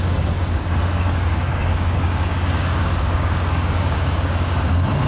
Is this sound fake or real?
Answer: fake